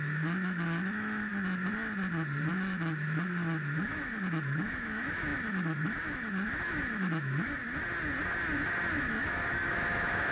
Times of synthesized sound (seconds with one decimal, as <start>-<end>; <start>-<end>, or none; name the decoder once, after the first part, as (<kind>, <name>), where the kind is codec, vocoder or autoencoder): 0.0-1.3 (autoencoder, DAC-VAE); 2.5-7.6; 9.2-10.3